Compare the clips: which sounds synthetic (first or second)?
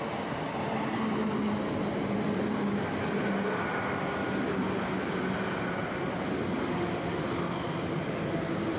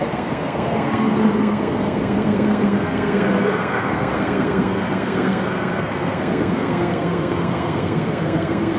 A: second